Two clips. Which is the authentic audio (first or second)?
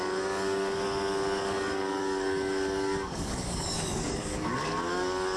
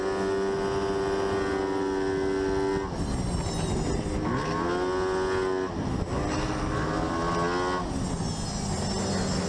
second